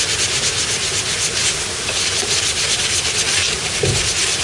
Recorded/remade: recorded